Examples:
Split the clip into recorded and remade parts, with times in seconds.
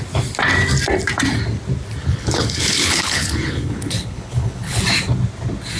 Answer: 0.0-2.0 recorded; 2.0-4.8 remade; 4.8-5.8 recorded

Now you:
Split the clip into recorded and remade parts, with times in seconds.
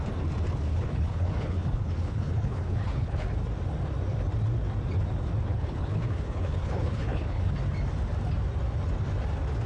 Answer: 0.0-0.7 recorded; 0.7-3.4 remade; 3.4-5.5 recorded; 5.5-7.5 remade; 7.5-9.7 recorded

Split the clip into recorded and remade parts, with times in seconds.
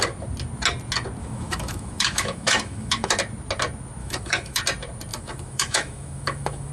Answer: 0.0-1.2 recorded; 1.2-3.1 remade; 3.1-4.0 recorded; 4.0-4.6 remade; 4.6-5.1 recorded; 5.1-6.7 remade